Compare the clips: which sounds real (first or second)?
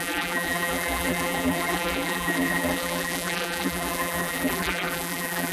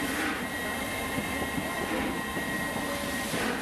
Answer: second